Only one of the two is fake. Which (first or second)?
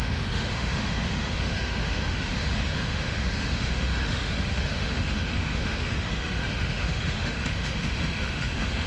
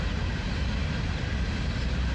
first